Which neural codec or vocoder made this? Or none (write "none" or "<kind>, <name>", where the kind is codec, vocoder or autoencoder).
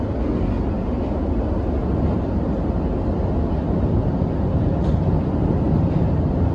none